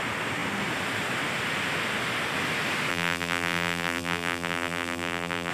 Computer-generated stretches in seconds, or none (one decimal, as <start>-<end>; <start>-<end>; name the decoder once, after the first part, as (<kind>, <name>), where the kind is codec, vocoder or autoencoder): 2.9-5.5 (vocoder, BigVGAN v2)